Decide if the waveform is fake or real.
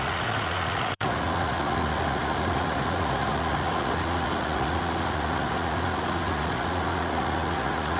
fake